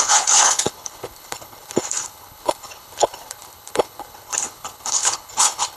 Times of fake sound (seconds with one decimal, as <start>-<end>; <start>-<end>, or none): 0.0-5.8